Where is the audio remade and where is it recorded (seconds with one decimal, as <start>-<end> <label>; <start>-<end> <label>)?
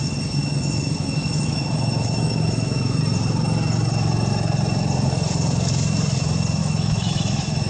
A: 0.0-0.4 recorded; 0.4-3.0 remade; 3.0-6.6 recorded; 6.6-7.7 remade